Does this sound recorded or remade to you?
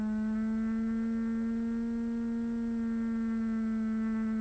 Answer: recorded